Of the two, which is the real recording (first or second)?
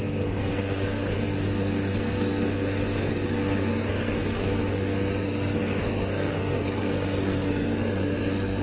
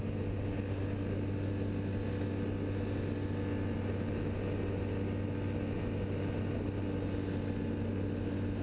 second